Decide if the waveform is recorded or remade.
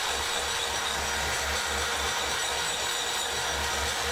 recorded